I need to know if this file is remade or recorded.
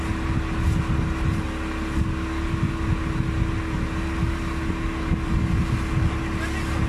recorded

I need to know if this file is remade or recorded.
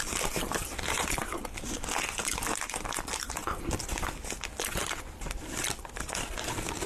recorded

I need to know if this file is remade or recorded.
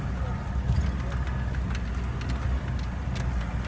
recorded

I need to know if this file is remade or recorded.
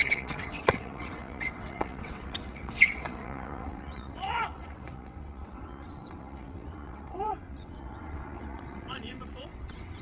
remade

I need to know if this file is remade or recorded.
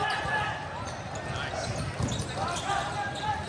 recorded